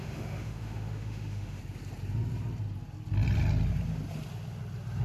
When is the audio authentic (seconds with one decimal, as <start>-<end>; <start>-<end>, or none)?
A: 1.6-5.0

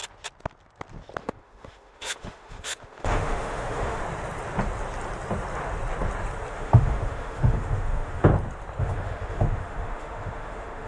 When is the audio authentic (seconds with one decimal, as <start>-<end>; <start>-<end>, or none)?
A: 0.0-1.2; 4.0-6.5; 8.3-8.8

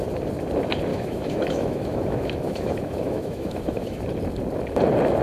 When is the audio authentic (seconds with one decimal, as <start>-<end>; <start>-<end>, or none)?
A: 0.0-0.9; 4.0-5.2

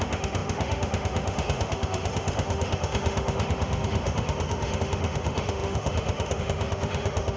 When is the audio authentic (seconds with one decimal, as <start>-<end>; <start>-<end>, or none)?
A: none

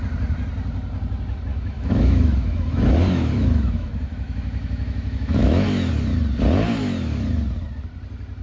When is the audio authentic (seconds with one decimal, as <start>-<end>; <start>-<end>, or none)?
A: 0.0-1.5; 5.9-8.4

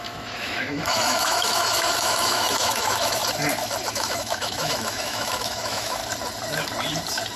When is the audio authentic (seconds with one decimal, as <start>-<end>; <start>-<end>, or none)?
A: 3.2-3.9; 6.0-7.4

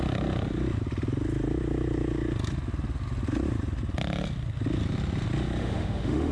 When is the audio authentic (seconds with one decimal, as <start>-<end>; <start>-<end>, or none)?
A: 0.0-5.6

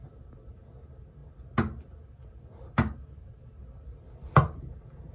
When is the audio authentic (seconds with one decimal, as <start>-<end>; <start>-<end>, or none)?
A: 0.0-5.1